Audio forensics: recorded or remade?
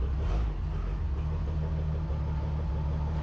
recorded